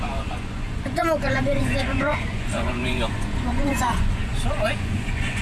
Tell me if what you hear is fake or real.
fake